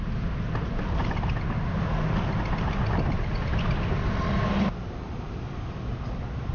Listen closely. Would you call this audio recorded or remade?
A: recorded